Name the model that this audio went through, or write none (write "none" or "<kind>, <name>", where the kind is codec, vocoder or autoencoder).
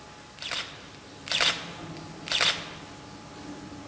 none